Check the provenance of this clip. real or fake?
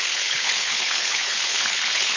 fake